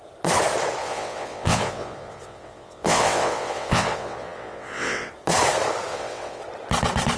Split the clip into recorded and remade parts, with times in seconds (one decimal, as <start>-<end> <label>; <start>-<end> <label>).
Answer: 0.0-0.8 recorded; 0.8-5.1 remade; 5.1-5.9 recorded; 5.9-6.4 remade; 6.4-7.2 recorded